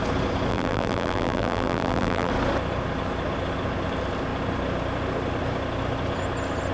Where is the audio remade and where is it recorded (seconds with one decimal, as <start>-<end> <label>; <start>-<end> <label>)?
0.0-0.5 recorded; 0.5-2.3 remade; 2.3-6.7 recorded